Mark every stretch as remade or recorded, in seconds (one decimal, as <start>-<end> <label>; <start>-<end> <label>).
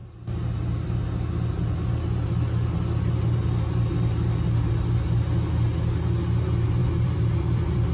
0.0-6.8 recorded; 6.8-7.9 remade